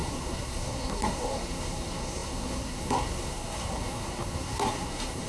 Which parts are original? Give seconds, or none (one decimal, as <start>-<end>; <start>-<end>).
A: none